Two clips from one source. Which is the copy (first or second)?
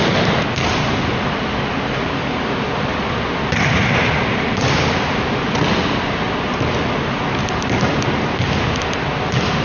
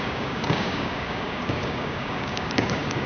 second